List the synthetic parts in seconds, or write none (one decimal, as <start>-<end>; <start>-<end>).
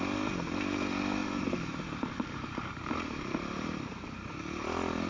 1.2-2.7